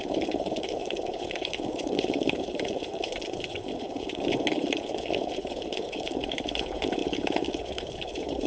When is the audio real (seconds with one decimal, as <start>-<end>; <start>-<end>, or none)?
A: none